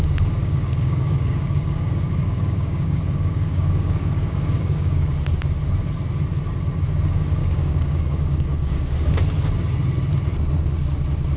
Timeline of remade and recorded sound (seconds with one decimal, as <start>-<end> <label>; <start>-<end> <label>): 0.0-0.4 recorded; 0.4-5.1 remade; 5.1-7.4 recorded; 7.4-9.1 remade; 9.1-11.4 recorded